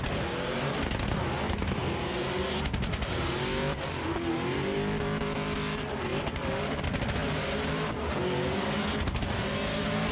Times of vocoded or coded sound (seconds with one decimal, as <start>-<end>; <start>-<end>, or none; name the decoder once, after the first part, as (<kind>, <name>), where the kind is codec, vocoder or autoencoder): 6.1-6.8 (codec, DAC)